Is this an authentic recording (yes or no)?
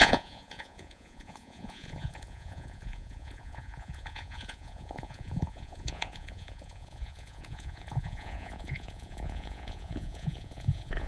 no